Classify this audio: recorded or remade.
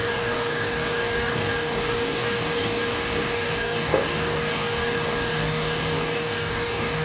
remade